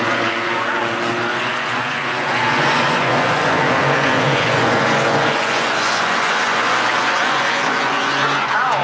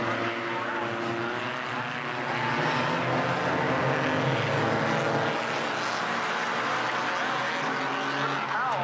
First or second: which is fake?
first